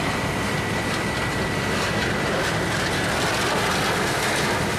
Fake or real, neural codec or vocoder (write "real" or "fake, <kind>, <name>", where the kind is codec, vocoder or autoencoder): real